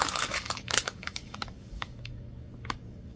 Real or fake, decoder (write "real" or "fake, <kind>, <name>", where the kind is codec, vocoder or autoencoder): fake, codec, DAC